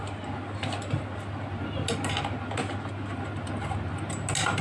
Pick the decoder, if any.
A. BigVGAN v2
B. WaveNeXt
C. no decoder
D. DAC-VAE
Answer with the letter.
C